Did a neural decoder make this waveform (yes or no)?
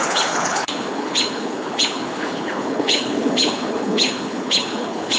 yes